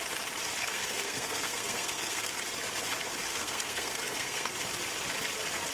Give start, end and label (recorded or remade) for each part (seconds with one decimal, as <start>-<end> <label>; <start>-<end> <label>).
0.0-0.6 recorded; 0.6-2.3 remade; 2.3-3.3 recorded; 3.3-4.5 remade; 4.5-5.7 recorded